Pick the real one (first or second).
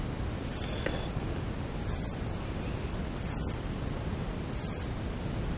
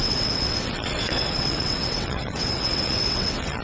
first